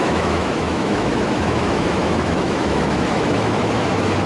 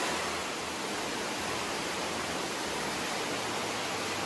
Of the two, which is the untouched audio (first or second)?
second